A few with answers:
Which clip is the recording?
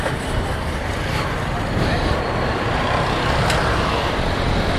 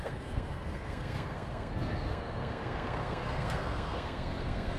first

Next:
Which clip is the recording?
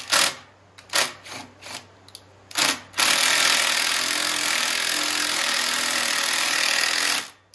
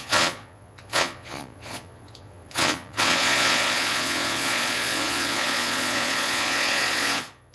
first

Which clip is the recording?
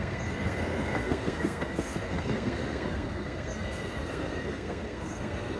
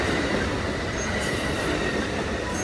second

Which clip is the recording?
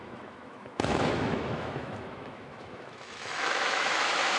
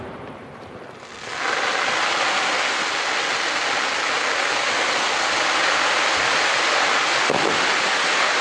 second